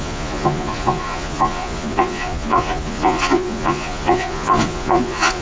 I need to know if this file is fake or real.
fake